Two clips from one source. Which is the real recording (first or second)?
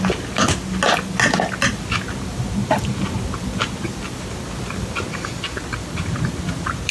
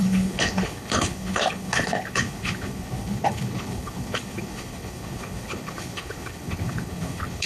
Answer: first